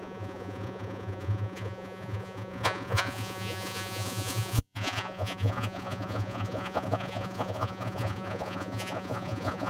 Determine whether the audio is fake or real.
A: fake